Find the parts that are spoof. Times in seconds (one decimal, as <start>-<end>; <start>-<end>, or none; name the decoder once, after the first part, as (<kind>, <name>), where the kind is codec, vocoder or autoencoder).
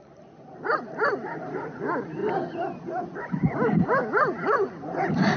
none